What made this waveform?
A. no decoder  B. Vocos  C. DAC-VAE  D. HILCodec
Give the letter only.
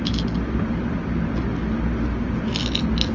A